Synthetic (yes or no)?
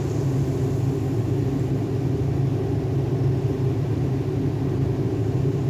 no